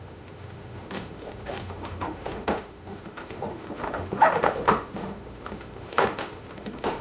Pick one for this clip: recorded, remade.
remade